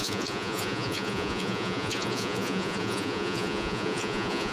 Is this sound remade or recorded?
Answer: remade